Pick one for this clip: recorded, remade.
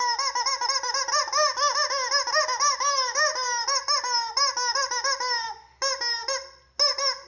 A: recorded